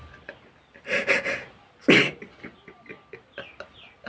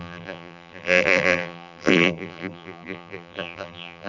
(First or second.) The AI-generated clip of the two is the second